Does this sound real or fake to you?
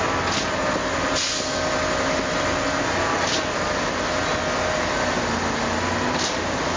real